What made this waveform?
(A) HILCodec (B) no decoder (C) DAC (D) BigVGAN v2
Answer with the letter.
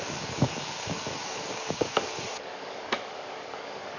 C